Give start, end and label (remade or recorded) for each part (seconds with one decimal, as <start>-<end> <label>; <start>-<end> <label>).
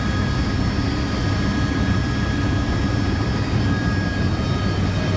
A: 0.0-5.2 recorded